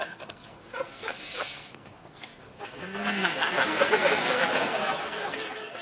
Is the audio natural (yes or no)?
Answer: no